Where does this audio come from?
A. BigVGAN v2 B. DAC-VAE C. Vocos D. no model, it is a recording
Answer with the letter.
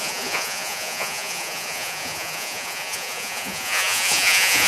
C